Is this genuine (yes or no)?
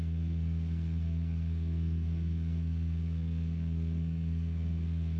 no